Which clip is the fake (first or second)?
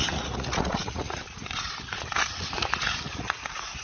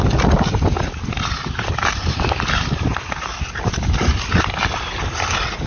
first